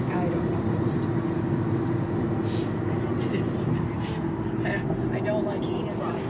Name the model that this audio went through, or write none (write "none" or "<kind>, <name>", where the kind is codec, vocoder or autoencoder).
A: none